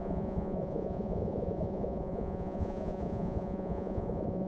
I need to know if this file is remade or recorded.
remade